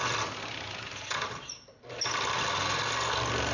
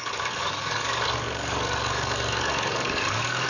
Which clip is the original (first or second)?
first